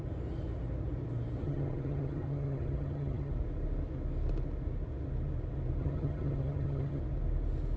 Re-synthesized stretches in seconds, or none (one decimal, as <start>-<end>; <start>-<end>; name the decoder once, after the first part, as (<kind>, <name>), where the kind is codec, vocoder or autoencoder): 1.4-3.3 (vocoder, HiFi-GAN); 5.8-7.0